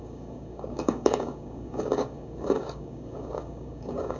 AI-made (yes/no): yes